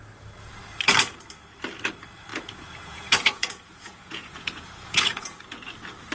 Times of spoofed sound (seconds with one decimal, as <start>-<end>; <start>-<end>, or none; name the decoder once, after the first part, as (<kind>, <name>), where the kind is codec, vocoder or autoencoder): 2.3-5.4 (vocoder, Vocos)